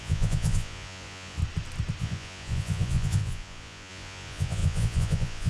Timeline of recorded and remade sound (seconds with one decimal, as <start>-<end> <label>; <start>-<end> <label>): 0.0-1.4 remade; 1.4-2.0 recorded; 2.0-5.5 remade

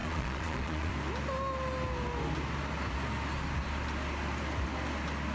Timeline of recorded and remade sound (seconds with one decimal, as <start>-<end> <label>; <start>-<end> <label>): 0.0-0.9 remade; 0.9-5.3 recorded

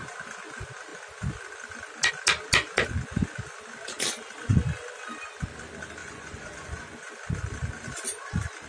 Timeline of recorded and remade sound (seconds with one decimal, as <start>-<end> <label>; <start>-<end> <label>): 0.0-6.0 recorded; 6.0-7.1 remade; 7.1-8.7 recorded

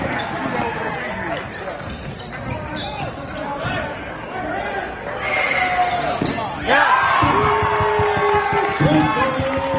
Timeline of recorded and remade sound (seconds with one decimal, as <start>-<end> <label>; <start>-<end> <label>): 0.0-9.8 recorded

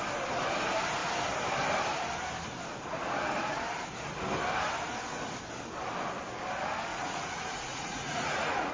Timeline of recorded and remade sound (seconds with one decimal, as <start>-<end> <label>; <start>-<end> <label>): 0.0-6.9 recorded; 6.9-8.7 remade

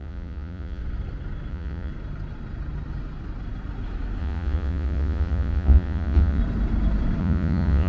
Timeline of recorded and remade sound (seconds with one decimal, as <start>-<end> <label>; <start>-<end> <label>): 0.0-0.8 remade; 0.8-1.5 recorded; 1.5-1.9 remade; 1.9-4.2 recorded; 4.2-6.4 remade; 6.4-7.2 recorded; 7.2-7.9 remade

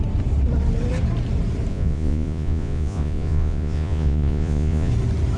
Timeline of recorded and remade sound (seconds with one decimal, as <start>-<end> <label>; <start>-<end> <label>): 0.0-1.7 recorded; 1.7-4.9 remade; 4.9-5.4 recorded